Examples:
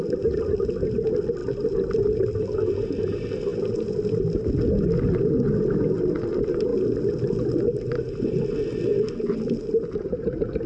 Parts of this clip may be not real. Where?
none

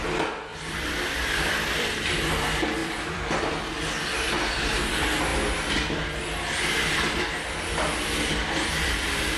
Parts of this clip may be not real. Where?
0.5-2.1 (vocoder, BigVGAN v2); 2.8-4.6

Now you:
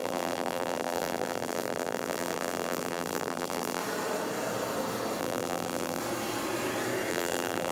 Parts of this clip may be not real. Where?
0.0-3.8 (vocoder, BigVGAN v2); 5.2-6.0; 7.1-7.7